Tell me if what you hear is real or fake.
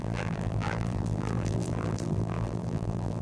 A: fake